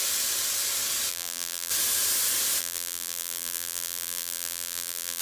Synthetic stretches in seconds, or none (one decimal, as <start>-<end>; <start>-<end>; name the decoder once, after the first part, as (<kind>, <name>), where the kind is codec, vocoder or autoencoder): 1.1-1.7 (vocoder, BigVGAN v2); 2.6-5.2